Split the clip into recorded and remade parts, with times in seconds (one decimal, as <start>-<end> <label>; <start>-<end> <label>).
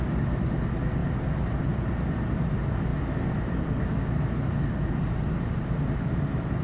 0.0-6.6 recorded